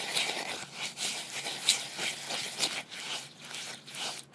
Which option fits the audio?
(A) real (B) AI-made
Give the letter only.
A